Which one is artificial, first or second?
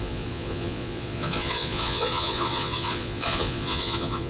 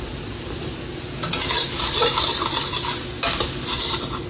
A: first